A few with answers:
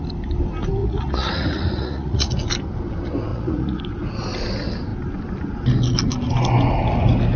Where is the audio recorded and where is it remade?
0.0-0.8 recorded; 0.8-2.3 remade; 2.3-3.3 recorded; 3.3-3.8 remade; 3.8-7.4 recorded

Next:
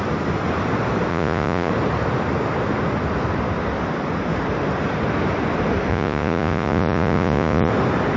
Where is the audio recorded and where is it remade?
0.0-1.1 recorded; 1.1-1.7 remade; 1.7-5.9 recorded; 5.9-7.7 remade; 7.7-8.2 recorded

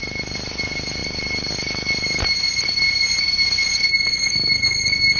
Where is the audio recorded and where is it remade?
0.0-5.2 recorded

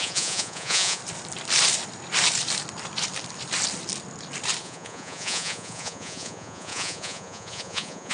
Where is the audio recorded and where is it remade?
0.0-1.0 remade; 1.0-4.6 recorded; 4.6-8.1 remade

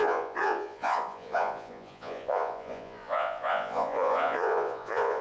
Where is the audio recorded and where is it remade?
0.0-5.2 remade